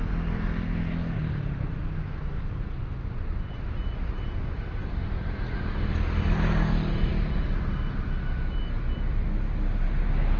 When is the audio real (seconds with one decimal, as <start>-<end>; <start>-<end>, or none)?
0.0-10.4